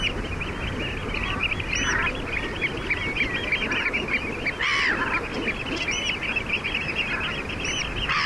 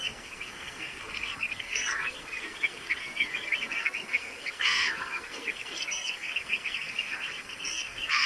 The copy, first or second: second